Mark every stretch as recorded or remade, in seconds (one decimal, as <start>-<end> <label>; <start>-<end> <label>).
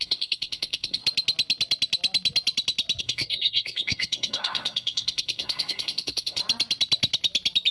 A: 0.0-1.0 remade; 1.0-3.0 recorded; 3.0-6.4 remade; 6.4-7.7 recorded